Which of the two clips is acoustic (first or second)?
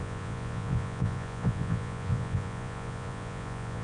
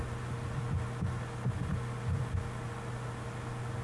second